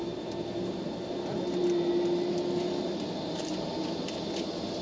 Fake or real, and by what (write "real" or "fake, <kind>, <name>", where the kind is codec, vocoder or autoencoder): real